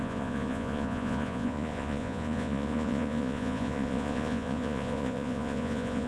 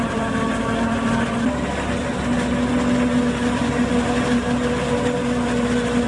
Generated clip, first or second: first